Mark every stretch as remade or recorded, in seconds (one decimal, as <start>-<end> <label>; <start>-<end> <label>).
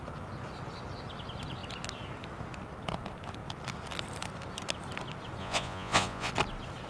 0.0-5.4 recorded; 5.4-6.3 remade; 6.3-6.9 recorded